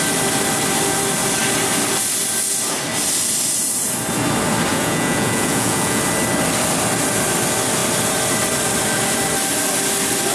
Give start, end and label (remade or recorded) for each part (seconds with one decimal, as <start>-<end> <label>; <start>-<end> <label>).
0.0-4.7 recorded; 4.7-6.0 remade; 6.0-10.3 recorded